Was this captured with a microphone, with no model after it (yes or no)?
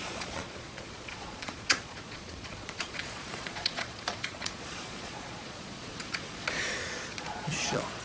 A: no